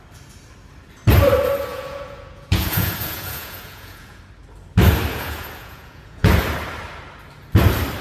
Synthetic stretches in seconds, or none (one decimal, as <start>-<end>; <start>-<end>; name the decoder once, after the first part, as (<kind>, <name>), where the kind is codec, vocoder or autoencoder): 1.7-4.2 (vocoder, Vocos); 5.1-6.3